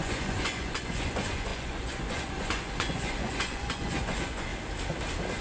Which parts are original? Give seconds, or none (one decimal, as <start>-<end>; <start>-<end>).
4.5-5.4